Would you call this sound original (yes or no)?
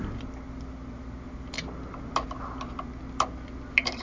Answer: yes